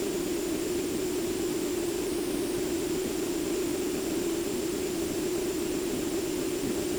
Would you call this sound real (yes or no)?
no